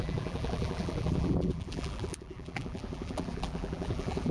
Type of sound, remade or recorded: remade